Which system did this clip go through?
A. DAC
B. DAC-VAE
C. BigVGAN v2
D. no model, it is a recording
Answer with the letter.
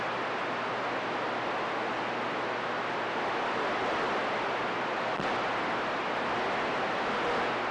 D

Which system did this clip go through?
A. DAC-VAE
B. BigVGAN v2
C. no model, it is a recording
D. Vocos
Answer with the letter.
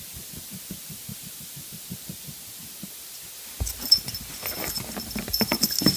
C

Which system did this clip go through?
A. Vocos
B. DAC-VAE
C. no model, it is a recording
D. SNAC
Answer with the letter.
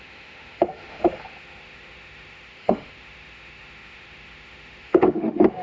B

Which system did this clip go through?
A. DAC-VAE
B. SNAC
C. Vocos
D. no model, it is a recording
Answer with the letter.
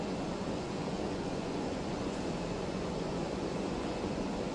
C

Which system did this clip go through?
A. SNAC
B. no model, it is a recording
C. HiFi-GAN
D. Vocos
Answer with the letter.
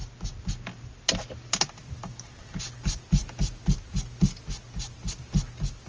B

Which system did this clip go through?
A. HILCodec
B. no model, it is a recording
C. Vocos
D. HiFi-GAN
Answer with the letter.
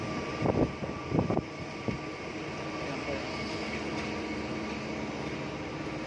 B